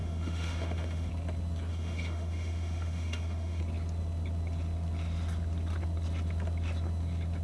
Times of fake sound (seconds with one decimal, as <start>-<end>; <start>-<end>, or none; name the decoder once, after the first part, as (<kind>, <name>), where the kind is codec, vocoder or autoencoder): 0.0-1.1 (autoencoder, DAC-VAE); 1.7-3.6